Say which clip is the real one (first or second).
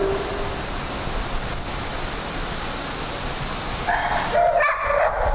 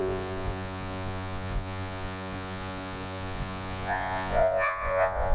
first